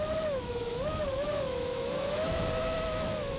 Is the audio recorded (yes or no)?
no